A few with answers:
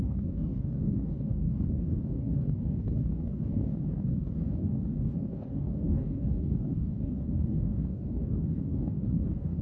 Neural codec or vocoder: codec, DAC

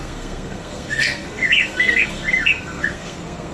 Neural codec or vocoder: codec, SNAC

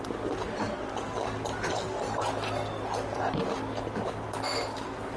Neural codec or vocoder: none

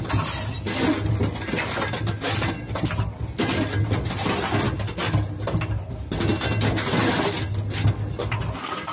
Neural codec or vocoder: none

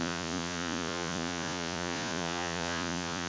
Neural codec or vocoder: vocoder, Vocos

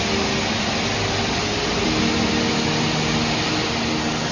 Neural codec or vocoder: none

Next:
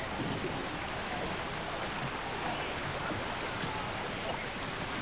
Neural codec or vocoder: none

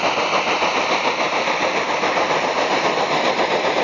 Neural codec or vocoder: none